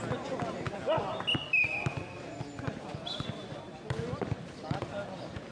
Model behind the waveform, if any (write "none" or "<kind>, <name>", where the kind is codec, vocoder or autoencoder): none